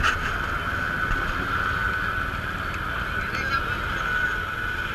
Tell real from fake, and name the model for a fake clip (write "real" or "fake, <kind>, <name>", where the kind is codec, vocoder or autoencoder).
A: real